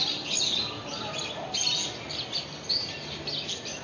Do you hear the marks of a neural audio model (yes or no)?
no